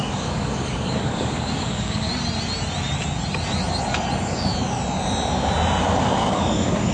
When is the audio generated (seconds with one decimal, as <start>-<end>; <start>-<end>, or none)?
0.0-2.1; 5.8-6.9